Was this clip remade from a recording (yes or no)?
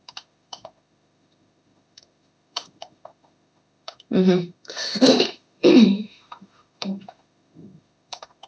yes